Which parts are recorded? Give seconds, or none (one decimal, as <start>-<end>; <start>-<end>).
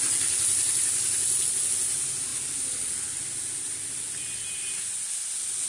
0.0-5.7